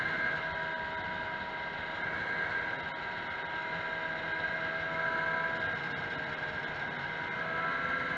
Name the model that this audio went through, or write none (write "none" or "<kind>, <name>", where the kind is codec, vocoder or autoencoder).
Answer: none